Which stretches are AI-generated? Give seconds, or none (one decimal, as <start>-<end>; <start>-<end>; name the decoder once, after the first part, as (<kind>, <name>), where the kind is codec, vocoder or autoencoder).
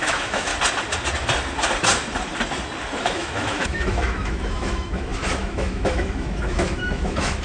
0.0-0.5 (autoencoder, DAC-VAE); 3.0-7.4